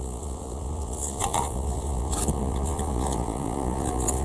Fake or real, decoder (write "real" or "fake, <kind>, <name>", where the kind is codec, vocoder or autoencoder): fake, vocoder, Vocos